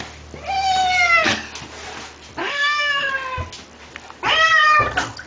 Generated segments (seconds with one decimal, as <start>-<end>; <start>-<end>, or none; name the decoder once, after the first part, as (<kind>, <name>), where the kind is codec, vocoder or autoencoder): 2.4-3.1 (autoencoder, DAC-VAE)